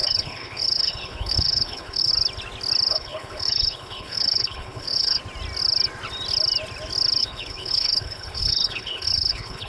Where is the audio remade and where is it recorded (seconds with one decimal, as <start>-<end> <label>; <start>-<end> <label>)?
0.0-2.1 remade; 2.1-2.9 recorded; 2.9-5.2 remade; 5.2-7.2 recorded; 7.2-9.7 remade